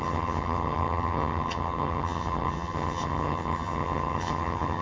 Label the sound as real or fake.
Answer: fake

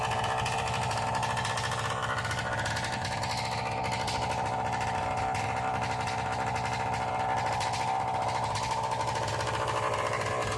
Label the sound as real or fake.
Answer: real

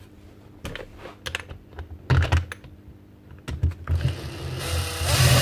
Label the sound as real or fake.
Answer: real